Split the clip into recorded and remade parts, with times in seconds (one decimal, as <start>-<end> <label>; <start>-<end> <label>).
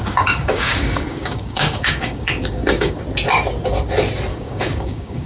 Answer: 0.0-3.0 remade; 3.0-4.3 recorded; 4.3-5.3 remade